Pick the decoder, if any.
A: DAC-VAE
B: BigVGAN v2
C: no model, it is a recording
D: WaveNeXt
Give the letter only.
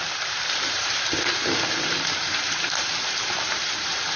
B